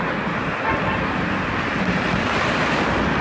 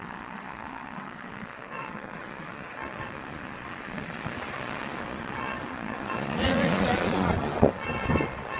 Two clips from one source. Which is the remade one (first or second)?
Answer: second